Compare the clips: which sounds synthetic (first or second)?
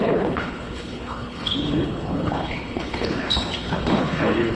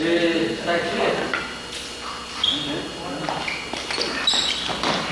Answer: first